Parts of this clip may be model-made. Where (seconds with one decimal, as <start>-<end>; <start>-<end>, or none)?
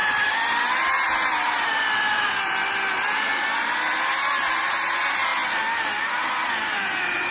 0.0-2.6; 4.0-5.3; 6.0-7.3